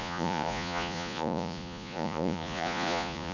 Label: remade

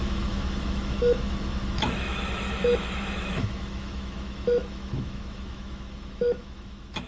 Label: remade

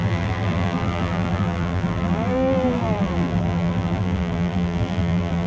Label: remade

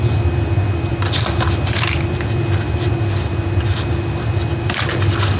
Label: recorded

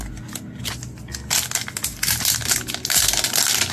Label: recorded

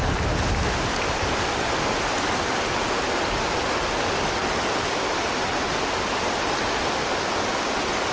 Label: recorded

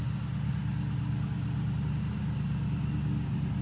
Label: recorded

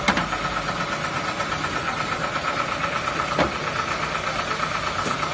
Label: recorded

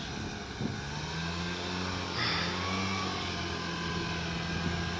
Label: recorded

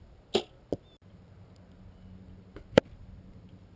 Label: recorded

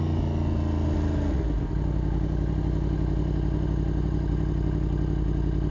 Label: recorded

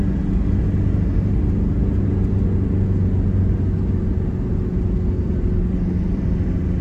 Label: recorded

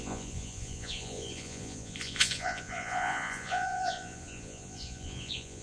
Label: remade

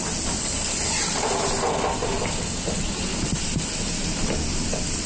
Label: recorded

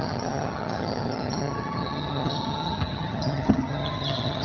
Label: remade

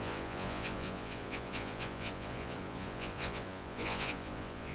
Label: remade